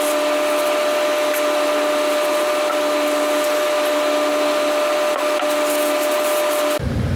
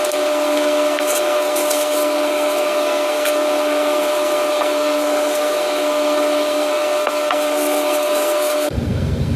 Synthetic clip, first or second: second